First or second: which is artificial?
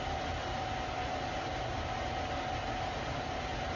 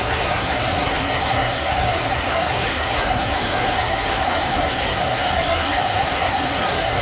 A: second